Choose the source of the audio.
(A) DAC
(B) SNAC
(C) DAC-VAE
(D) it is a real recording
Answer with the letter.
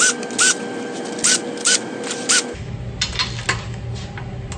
D